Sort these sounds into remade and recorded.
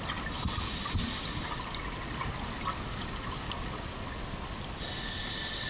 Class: recorded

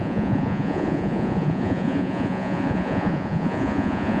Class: remade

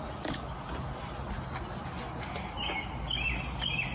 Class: recorded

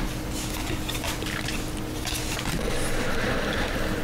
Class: recorded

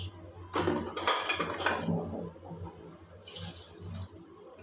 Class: recorded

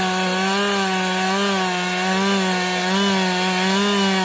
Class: recorded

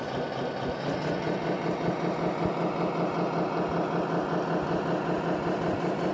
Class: recorded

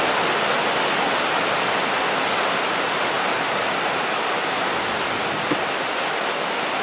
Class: recorded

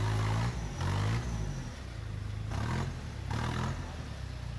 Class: recorded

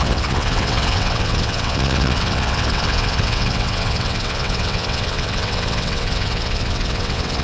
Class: remade